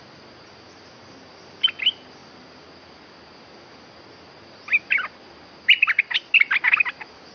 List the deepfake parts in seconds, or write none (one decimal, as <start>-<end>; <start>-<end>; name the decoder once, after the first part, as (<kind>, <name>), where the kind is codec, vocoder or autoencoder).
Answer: none